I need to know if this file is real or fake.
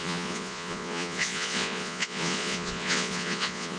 fake